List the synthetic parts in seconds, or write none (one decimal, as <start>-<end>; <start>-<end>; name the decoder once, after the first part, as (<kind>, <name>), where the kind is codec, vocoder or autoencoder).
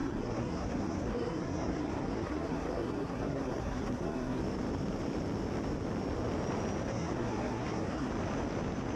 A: 0.0-4.4 (codec, SNAC); 6.9-8.1